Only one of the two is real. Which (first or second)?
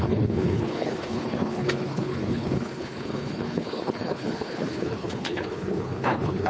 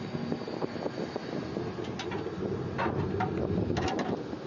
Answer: second